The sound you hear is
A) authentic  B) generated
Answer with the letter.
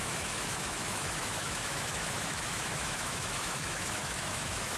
B